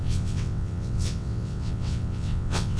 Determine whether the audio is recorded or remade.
remade